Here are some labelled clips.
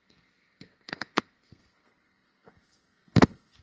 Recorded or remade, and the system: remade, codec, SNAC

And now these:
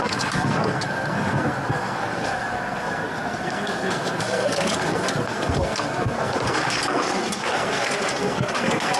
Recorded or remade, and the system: remade, codec, SNAC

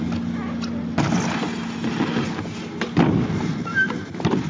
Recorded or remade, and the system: recorded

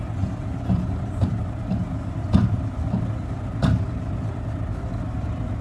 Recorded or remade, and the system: remade, vocoder, BigVGAN v2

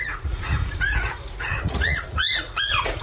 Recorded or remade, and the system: remade, vocoder, Vocos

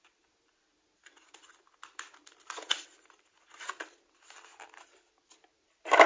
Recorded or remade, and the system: recorded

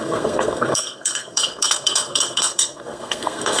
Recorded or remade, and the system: remade, codec, SNAC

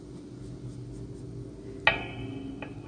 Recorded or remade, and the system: recorded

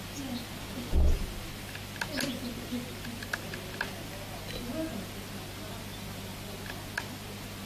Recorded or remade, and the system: recorded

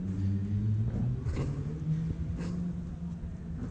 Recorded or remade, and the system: recorded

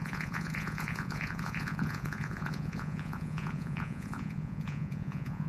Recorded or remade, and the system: remade, vocoder, Vocos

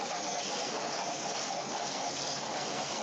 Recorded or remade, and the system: remade, codec, SNAC